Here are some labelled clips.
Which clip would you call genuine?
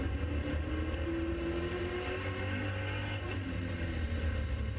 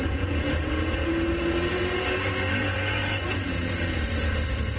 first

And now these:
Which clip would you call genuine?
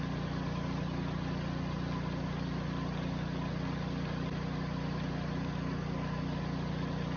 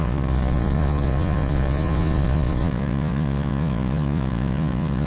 first